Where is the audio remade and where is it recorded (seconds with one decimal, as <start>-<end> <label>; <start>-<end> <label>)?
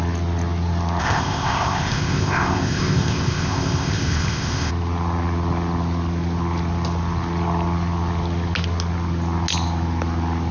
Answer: 0.0-1.0 recorded; 1.0-4.7 remade; 4.7-10.5 recorded